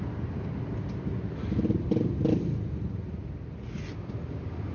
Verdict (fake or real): real